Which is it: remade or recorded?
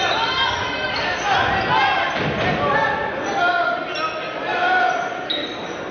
recorded